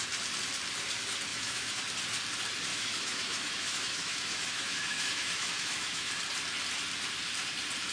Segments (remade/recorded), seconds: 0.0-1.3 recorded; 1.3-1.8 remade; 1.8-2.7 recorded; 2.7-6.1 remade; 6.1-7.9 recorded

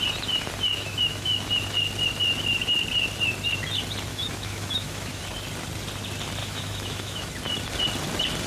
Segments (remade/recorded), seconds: 0.0-0.7 recorded; 0.7-1.5 remade; 1.5-4.1 recorded; 4.1-5.2 remade; 5.2-6.4 recorded; 6.4-7.3 remade; 7.3-8.5 recorded

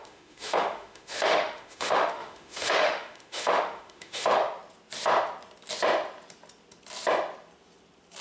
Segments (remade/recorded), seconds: 0.0-4.4 remade; 4.4-8.2 recorded